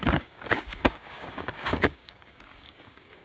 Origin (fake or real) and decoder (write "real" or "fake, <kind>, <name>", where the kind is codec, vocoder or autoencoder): fake, codec, DAC